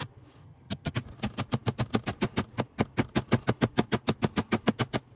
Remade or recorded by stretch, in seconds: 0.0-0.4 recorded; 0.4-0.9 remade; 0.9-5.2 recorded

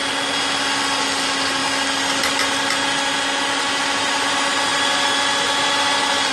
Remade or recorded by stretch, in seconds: 0.0-6.3 recorded

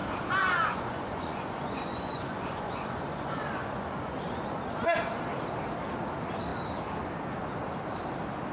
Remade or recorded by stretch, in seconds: 0.0-4.6 remade; 4.6-8.5 recorded

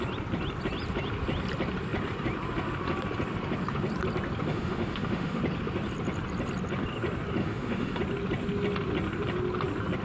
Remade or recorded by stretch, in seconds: 0.0-4.5 recorded; 4.5-5.4 remade; 5.4-7.4 recorded; 7.4-8.0 remade; 8.0-10.0 recorded

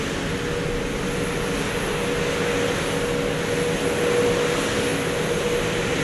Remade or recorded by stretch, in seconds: 0.0-6.0 recorded